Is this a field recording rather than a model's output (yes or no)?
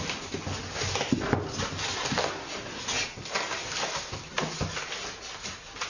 yes